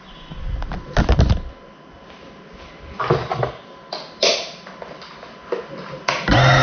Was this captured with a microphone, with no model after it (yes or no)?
yes